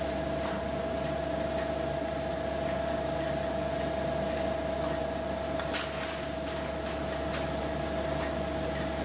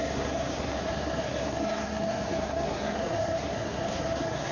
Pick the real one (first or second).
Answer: first